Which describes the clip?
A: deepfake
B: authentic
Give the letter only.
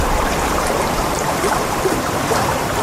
A